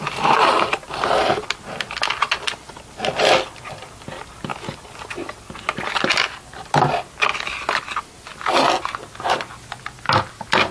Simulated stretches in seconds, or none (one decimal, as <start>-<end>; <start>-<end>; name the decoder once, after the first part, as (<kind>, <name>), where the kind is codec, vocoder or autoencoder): none